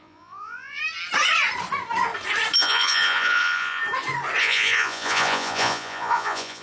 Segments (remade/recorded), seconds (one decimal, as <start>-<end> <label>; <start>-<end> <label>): 0.0-0.8 remade; 0.8-2.6 recorded; 2.6-3.8 remade; 3.8-4.4 recorded; 4.4-6.6 remade